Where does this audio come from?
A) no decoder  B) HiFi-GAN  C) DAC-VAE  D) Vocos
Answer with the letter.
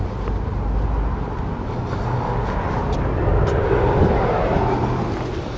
A